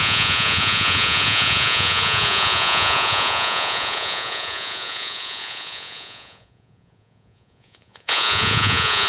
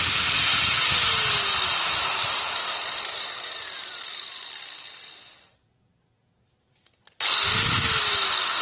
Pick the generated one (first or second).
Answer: first